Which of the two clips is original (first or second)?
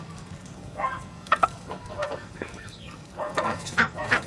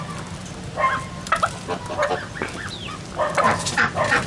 second